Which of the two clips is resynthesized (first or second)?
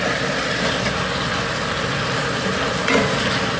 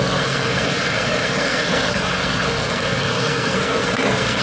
second